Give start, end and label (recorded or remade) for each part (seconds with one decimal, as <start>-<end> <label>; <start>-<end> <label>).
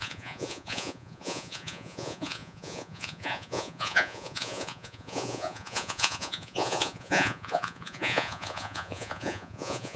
0.0-10.0 remade